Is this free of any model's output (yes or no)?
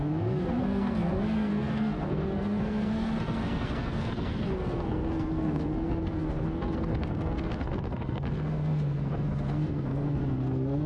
no